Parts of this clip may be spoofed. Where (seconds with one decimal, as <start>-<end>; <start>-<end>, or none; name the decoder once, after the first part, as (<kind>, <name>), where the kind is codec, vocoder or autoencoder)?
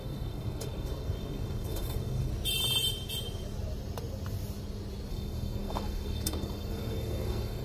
0.0-2.3 (codec, SNAC); 5.1-7.6